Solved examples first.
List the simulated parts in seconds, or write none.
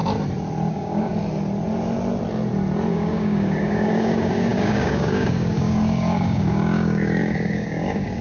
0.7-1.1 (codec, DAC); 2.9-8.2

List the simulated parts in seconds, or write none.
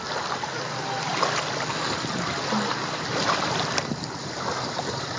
none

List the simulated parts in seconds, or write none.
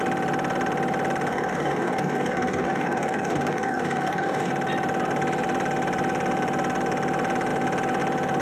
1.3-4.5 (codec, DAC)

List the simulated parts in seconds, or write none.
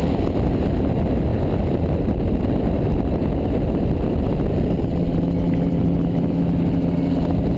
none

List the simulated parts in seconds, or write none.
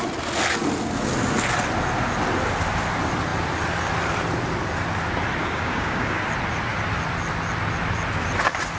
5.4-6.2 (codec, DAC)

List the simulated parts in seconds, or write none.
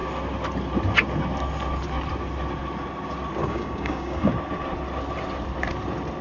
3.4-4.3 (codec, DAC)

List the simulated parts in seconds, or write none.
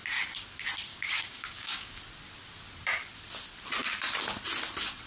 0.9-2.0 (codec, DAC)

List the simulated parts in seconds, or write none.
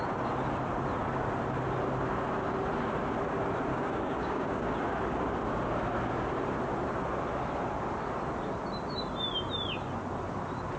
3.7-4.7 (codec, DAC)